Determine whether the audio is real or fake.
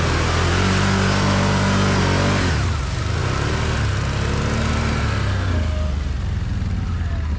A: real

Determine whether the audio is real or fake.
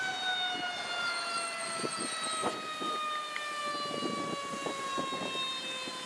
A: real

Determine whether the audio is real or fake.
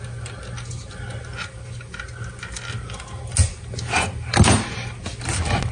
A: real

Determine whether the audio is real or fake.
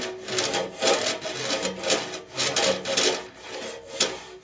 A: real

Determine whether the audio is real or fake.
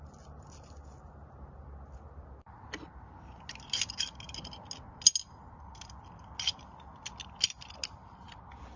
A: real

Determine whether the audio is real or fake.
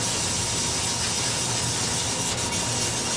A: real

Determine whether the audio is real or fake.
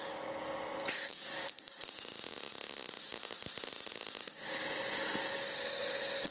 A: real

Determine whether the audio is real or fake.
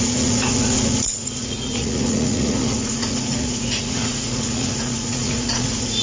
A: fake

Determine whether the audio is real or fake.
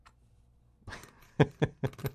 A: real